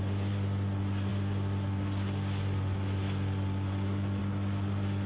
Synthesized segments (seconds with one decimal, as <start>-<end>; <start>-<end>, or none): none